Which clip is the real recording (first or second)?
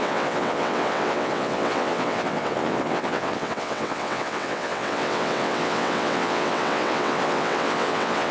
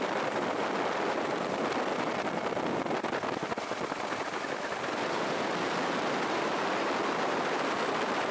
second